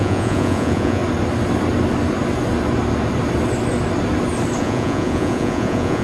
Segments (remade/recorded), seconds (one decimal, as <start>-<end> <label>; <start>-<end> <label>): 0.0-1.0 remade; 1.0-4.6 recorded; 4.6-6.0 remade